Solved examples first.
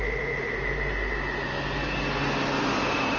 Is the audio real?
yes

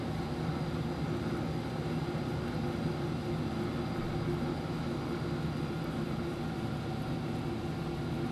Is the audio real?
yes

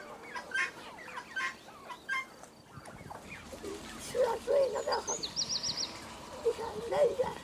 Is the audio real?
yes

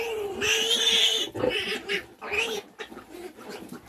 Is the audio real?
yes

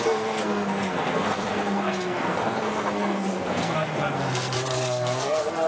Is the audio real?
no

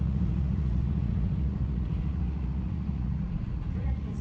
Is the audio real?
no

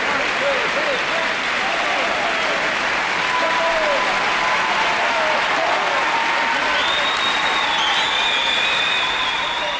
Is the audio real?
yes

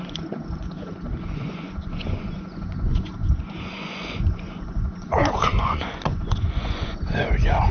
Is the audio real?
no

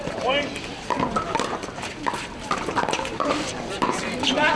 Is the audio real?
no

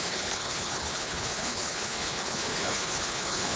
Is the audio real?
no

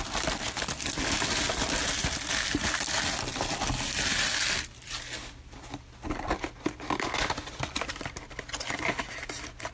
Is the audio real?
yes